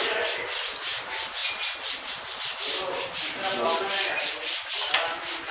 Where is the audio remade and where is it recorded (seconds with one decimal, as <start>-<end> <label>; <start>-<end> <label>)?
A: 0.0-5.5 recorded